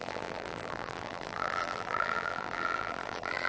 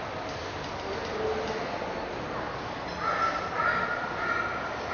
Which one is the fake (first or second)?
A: first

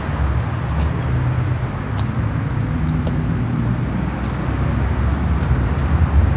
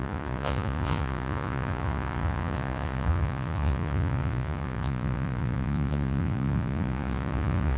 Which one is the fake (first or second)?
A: second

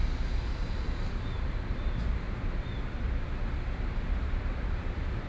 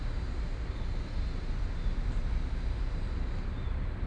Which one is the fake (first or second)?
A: first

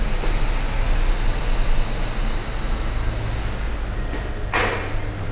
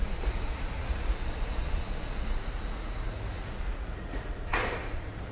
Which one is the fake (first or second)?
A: second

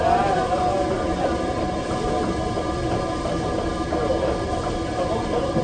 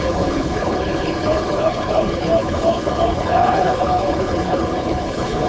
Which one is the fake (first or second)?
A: second